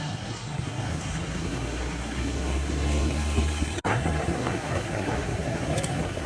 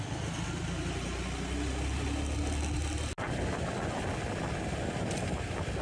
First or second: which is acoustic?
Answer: second